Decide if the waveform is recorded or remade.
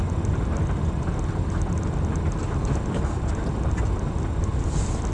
recorded